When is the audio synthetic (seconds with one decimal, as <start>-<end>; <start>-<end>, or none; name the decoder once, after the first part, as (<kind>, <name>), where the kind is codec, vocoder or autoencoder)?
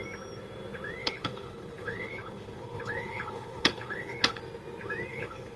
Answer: 1.0-4.4 (codec, HILCodec); 5.1-5.6